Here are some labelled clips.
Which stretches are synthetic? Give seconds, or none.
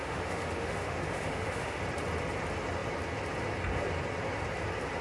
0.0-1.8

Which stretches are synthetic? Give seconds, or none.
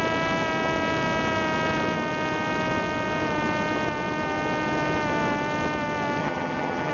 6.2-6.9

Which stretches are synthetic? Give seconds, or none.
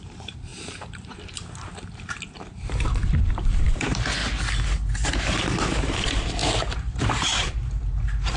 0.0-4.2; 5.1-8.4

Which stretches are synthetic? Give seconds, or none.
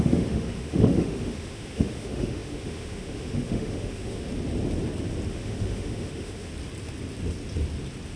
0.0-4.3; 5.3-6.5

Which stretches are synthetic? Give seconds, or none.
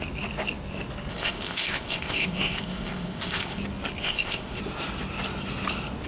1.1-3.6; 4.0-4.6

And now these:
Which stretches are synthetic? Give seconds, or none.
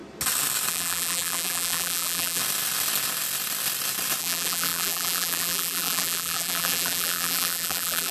0.7-2.4; 4.2-8.1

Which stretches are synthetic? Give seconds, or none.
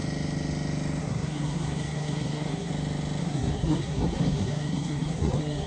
1.0-2.7; 3.2-5.7